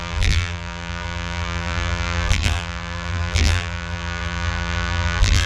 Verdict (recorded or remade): remade